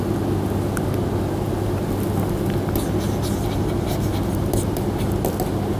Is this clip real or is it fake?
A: real